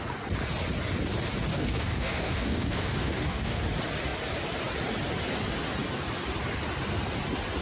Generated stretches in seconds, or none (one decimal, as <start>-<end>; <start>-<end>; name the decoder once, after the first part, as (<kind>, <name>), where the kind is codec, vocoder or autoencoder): 1.5-3.6 (codec, DAC)